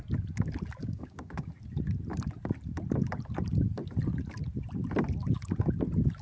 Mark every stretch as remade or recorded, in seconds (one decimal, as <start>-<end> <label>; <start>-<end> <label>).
0.0-0.8 recorded; 0.8-1.5 remade; 1.5-6.2 recorded